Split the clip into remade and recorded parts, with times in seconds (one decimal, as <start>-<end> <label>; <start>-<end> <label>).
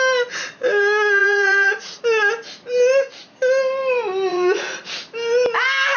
0.0-1.2 recorded; 1.2-2.0 remade; 2.0-4.3 recorded; 4.3-4.9 remade; 4.9-6.0 recorded